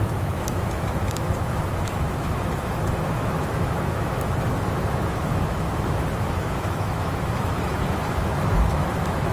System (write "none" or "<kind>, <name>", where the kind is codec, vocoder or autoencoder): autoencoder, DAC-VAE